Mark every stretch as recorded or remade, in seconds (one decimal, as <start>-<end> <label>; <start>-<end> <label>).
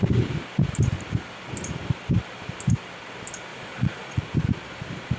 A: 0.0-3.5 recorded; 3.5-4.2 remade; 4.2-5.2 recorded